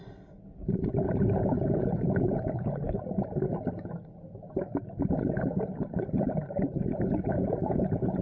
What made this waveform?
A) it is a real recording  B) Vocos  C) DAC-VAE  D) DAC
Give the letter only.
A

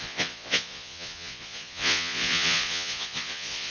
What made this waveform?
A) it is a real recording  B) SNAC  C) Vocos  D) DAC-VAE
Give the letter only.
C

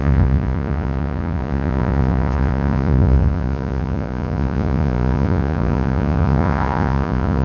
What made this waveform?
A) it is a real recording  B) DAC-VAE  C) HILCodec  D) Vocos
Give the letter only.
D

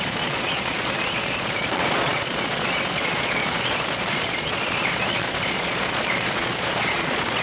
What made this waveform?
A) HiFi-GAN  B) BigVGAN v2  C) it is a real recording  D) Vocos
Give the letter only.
D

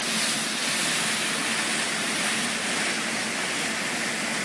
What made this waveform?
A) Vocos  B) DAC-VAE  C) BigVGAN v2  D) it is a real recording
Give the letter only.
D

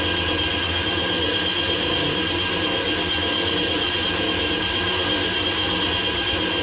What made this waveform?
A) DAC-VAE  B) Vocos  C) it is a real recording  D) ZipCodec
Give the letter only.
C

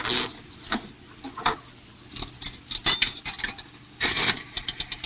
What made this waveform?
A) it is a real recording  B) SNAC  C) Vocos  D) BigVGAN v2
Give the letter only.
A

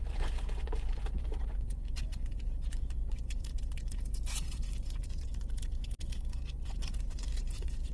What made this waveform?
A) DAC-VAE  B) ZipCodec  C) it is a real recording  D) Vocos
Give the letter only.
D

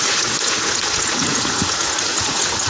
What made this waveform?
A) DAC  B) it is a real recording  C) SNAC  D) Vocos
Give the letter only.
D